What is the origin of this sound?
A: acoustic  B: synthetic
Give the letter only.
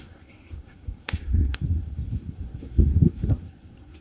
B